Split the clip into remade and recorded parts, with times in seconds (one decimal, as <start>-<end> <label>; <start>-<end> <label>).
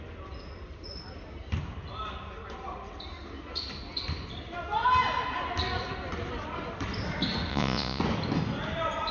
0.0-7.5 recorded; 7.5-8.0 remade; 8.0-9.1 recorded